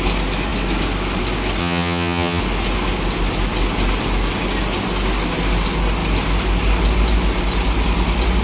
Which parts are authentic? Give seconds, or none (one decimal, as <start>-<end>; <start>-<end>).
0.0-1.6; 2.4-8.4